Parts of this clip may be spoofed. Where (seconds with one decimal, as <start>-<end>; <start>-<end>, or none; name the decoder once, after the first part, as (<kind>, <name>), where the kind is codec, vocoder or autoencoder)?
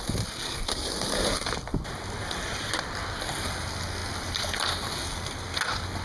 none